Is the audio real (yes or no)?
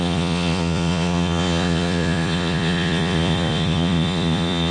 no